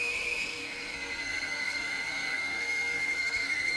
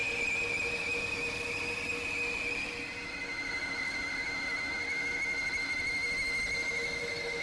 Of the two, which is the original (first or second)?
second